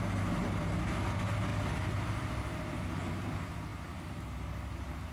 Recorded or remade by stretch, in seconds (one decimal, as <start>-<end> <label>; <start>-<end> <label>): 0.0-5.1 recorded